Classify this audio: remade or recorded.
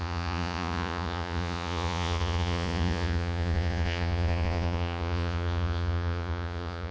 remade